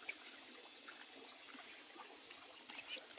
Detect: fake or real real